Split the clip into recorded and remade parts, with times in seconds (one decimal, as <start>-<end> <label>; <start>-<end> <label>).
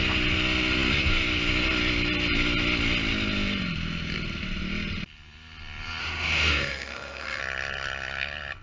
0.0-6.0 recorded; 6.0-7.4 remade; 7.4-8.6 recorded